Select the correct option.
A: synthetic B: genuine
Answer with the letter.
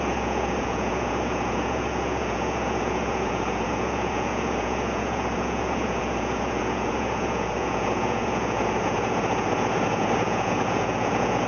A